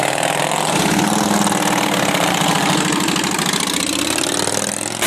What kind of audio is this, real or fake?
real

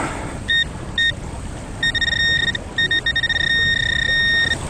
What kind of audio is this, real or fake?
real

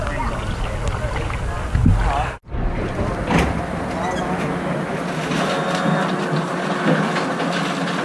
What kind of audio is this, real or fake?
real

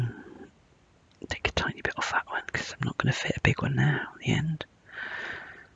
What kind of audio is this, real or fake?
real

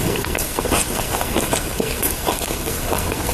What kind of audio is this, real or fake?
fake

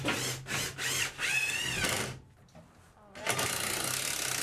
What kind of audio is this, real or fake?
real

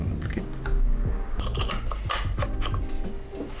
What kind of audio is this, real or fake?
real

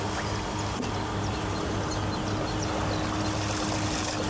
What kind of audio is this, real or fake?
real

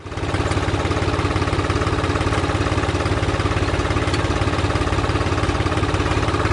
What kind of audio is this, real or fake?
real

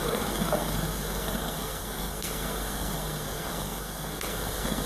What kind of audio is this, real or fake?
fake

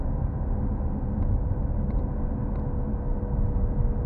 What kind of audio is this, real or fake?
real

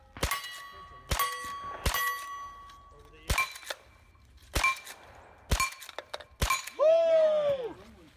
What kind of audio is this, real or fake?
real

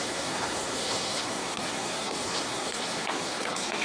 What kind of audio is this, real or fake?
fake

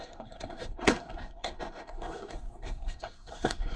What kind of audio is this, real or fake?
fake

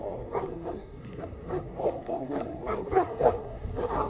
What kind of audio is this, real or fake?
fake